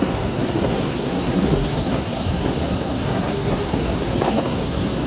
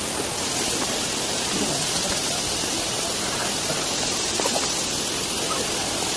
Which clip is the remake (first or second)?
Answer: first